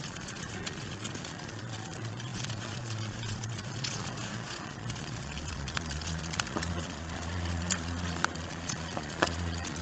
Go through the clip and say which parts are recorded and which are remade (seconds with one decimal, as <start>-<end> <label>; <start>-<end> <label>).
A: 0.0-9.8 remade